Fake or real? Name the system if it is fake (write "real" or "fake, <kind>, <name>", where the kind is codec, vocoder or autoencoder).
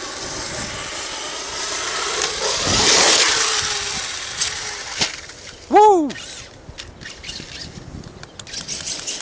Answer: real